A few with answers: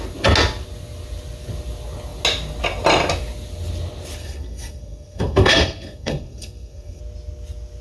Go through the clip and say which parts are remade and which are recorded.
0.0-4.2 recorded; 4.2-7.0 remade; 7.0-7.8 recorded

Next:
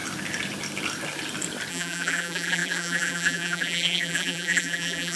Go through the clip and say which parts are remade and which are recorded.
0.0-1.7 recorded; 1.7-5.2 remade